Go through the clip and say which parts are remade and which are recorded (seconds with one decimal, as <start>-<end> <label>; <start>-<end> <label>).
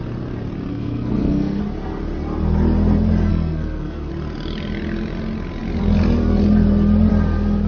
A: 0.0-0.7 recorded; 0.7-1.6 remade; 1.6-3.3 recorded; 3.3-4.1 remade; 4.1-7.7 recorded